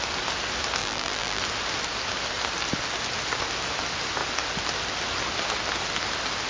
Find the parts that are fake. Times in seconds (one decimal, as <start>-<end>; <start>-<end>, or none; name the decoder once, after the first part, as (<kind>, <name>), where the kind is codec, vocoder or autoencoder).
0.8-1.4 (vocoder, BigVGAN v2)